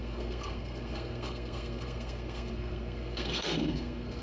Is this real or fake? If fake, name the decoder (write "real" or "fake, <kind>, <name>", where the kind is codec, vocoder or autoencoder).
fake, codec, SNAC